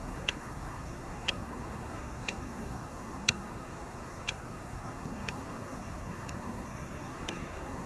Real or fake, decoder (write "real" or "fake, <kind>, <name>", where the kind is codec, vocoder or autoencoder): fake, codec, SNAC